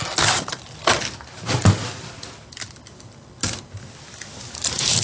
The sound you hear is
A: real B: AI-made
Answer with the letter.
A